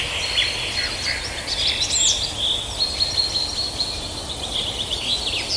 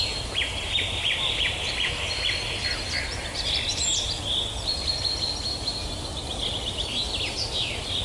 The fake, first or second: second